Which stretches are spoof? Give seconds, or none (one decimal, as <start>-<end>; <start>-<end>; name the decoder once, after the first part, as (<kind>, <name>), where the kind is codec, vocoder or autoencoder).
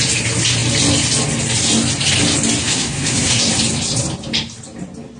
2.6-3.5 (codec, SNAC)